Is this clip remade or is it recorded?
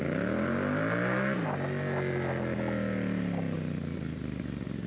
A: recorded